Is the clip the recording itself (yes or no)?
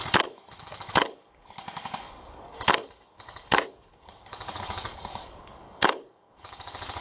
no